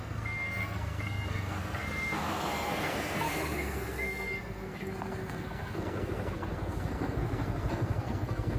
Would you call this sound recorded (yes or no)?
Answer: no